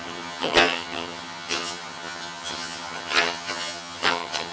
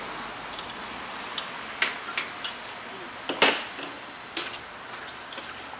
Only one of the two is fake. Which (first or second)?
first